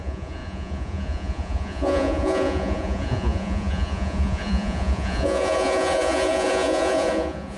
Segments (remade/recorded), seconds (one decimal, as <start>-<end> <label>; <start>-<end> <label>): 0.0-7.6 remade